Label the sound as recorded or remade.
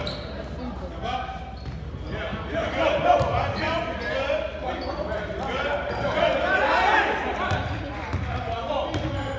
recorded